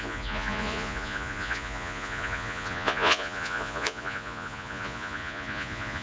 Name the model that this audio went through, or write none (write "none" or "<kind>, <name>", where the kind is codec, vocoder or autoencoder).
vocoder, Vocos